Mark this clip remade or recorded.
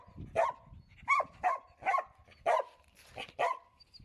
recorded